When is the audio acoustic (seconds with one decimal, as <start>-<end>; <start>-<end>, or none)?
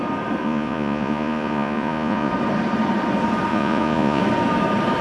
0.0-0.4; 2.3-3.5; 4.2-5.0